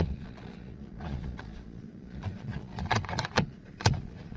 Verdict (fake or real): fake